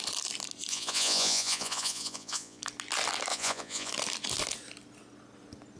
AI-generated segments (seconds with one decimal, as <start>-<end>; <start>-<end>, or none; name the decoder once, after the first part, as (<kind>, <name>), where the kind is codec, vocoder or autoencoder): 0.7-2.6 (vocoder, Vocos); 3.3-3.9